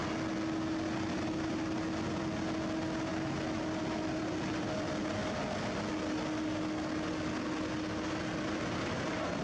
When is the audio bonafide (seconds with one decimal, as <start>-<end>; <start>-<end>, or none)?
0.0-9.4